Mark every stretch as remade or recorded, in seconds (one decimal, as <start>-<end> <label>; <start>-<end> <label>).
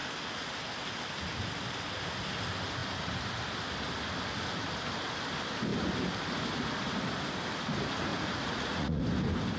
0.0-8.1 recorded; 8.1-9.0 remade; 9.0-9.6 recorded